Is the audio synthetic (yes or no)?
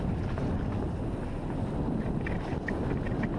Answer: no